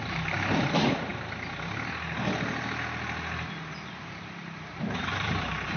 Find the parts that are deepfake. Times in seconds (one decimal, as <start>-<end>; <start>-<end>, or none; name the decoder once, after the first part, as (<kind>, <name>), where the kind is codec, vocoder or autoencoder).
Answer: 0.0-1.1 (vocoder, BigVGAN v2); 3.9-5.8